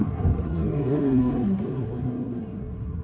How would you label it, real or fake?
fake